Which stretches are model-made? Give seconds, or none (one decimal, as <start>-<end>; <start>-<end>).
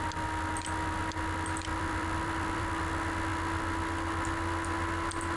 1.7-2.7